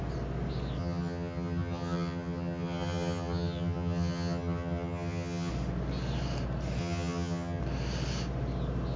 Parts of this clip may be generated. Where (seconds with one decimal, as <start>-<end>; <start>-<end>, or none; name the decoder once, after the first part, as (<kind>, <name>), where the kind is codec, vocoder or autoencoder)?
0.8-5.5 (vocoder, HiFi-GAN); 6.8-7.6